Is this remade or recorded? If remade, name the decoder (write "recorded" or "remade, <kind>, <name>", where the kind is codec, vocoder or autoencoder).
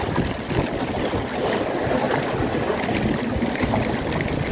recorded